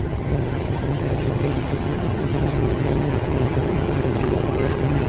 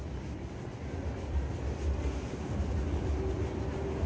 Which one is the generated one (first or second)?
first